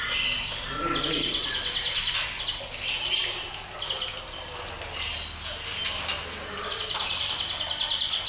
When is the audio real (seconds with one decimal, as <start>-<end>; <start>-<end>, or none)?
0.0-8.3